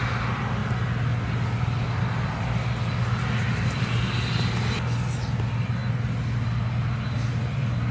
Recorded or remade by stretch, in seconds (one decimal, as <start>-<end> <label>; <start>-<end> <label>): 0.0-7.9 recorded